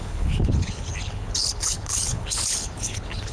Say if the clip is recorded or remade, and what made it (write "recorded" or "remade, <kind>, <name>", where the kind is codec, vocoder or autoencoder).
remade, codec, HILCodec